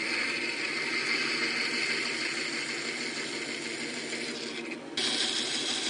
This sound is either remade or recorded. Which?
recorded